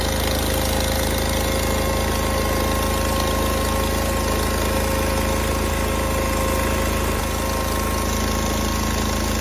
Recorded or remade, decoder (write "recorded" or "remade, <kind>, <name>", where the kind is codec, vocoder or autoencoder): recorded